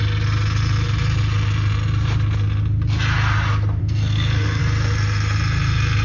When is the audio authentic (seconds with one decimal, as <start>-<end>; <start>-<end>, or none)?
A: 0.0-3.8; 4.6-6.0